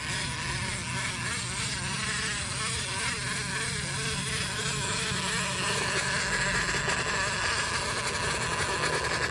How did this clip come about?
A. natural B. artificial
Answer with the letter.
A